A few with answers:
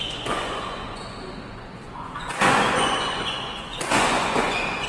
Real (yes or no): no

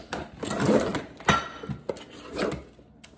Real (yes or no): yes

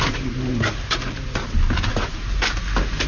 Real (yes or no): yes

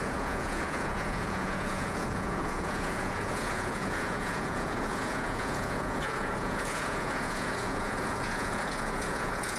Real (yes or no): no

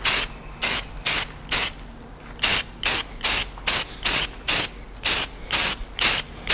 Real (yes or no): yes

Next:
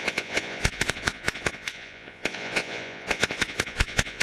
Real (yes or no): no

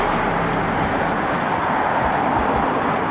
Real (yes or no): yes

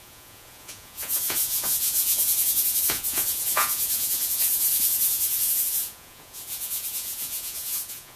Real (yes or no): no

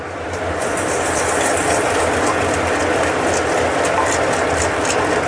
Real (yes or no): yes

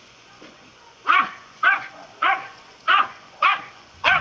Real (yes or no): no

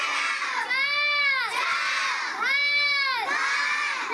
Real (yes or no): yes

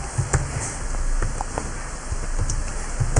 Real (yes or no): yes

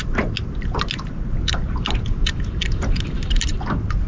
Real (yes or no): yes